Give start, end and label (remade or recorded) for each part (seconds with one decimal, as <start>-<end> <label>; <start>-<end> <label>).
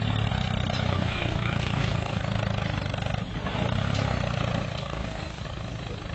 0.0-0.9 recorded; 0.9-2.2 remade; 2.2-4.8 recorded; 4.8-5.4 remade; 5.4-6.1 recorded